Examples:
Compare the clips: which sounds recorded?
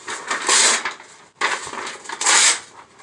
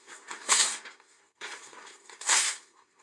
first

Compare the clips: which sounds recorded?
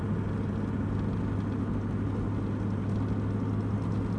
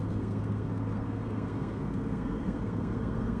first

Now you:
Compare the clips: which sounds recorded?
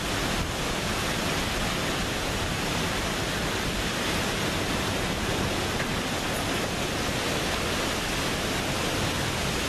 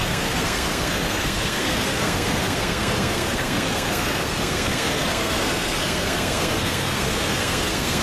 first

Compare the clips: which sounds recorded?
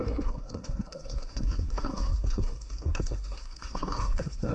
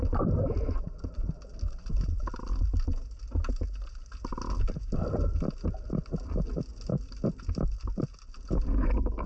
second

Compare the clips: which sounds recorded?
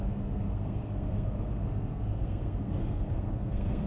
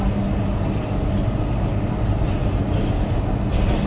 second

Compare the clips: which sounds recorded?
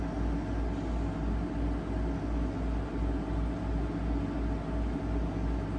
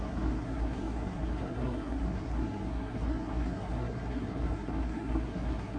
first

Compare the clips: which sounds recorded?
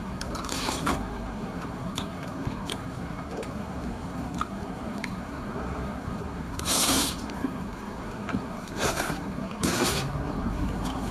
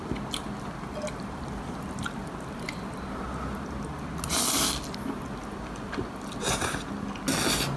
second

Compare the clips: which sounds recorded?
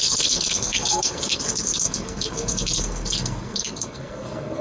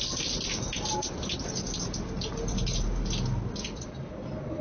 second